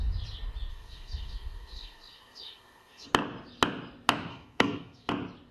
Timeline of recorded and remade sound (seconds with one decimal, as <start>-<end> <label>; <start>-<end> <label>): 0.0-0.7 recorded; 0.7-3.1 remade; 3.1-4.3 recorded; 4.3-5.1 remade; 5.1-5.5 recorded